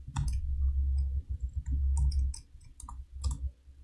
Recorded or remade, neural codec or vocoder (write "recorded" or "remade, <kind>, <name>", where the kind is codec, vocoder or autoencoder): recorded